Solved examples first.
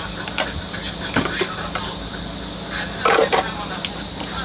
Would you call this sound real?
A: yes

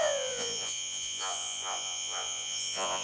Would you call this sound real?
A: no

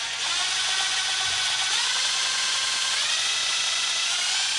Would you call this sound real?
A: no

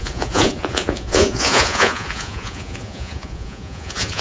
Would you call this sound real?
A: no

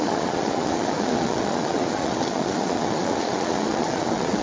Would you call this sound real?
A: no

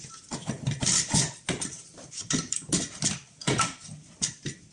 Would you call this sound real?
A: yes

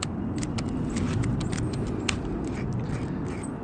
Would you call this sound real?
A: yes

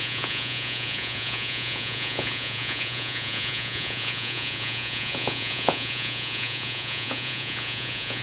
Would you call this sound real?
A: no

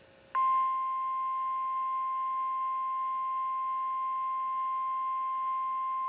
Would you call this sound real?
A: yes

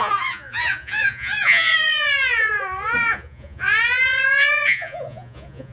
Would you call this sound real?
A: no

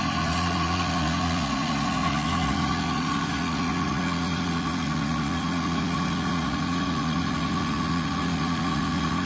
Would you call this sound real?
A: no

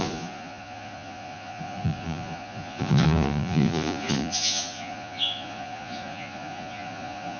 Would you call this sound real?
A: no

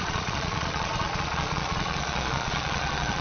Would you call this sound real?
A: no